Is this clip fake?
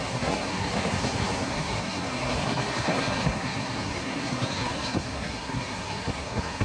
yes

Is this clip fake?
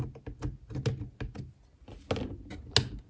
no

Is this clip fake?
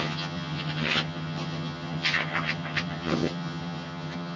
yes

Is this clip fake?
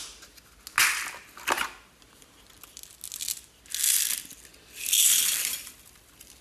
no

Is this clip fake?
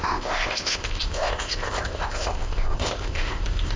yes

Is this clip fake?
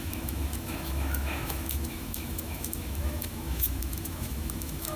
yes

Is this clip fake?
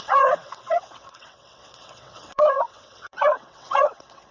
yes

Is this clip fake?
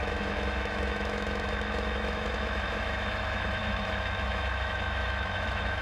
yes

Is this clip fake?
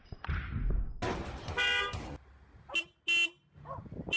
no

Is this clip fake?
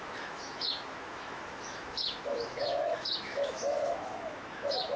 yes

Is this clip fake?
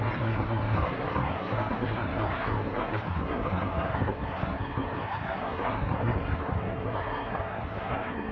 yes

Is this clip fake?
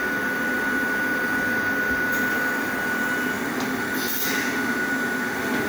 no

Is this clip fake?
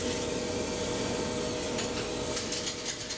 no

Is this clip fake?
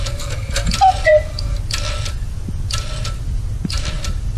no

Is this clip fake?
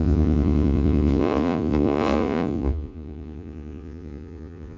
yes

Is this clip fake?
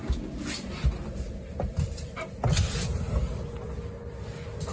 no